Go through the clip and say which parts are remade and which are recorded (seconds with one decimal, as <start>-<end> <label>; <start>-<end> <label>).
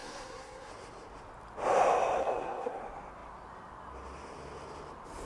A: 0.0-0.7 remade; 0.7-2.2 recorded; 2.2-2.8 remade; 2.8-5.3 recorded